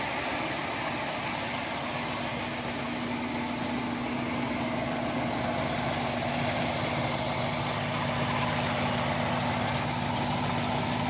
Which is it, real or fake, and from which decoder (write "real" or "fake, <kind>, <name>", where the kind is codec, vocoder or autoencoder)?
real